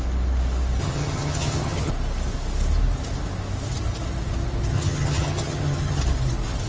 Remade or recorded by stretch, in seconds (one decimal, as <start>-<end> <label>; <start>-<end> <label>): 0.0-0.8 recorded; 0.8-1.9 remade; 1.9-4.7 recorded; 4.7-6.0 remade; 6.0-6.7 recorded